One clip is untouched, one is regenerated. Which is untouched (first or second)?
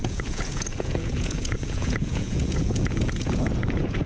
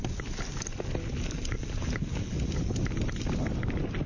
second